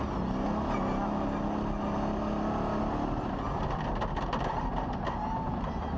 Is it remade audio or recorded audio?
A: recorded